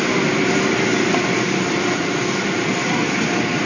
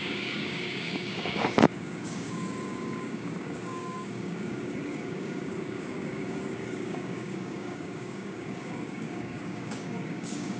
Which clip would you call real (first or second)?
first